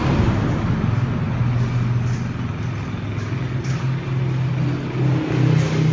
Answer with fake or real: real